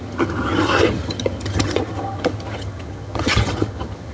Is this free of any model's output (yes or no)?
no